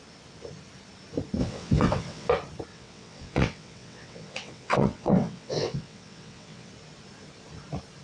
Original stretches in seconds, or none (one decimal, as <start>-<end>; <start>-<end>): 0.0-1.4; 2.3-2.7; 6.7-8.0